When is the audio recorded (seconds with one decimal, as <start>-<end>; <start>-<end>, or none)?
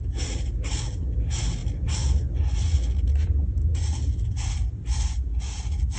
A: 0.0-6.0